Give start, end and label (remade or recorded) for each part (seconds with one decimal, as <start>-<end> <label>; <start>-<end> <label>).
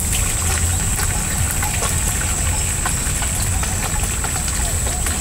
0.0-5.2 recorded